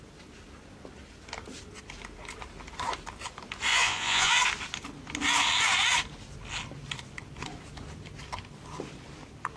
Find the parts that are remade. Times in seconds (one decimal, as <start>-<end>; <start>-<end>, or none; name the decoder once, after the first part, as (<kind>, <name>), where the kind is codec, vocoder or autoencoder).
3.7-4.4 (vocoder, Vocos)